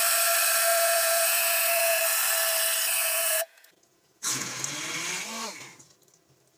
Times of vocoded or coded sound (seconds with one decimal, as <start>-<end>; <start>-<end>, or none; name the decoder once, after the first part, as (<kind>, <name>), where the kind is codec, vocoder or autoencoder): 0.7-2.0 (vocoder, Vocos); 3.0-4.6